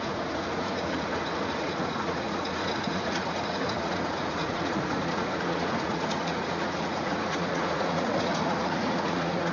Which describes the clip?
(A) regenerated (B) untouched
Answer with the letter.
A